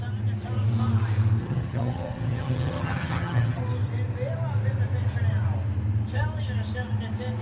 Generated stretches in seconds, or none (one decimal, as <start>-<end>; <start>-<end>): 1.4-3.6